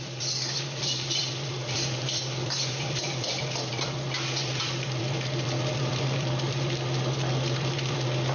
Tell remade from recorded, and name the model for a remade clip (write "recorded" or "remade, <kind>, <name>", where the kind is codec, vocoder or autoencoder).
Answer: remade, vocoder, BigVGAN v2